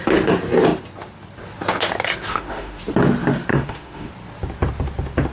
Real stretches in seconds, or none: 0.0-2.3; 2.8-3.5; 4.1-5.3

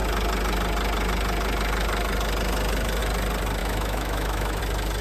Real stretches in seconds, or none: 0.0-3.6; 4.6-5.0

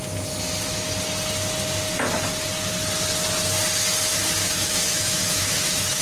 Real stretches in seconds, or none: 0.0-4.4